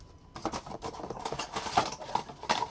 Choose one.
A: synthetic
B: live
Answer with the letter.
B